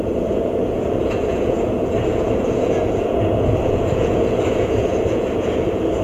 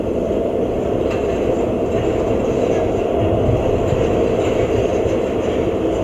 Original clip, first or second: second